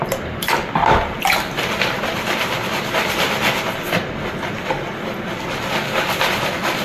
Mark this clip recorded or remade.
recorded